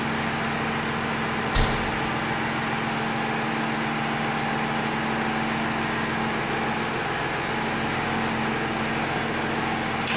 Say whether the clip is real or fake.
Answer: real